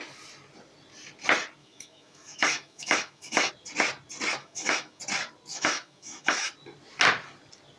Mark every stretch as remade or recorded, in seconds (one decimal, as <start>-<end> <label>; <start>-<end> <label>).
0.0-1.6 recorded; 1.6-3.5 remade; 3.5-4.4 recorded; 4.4-5.0 remade; 5.0-5.5 recorded; 5.5-6.5 remade; 6.5-7.8 recorded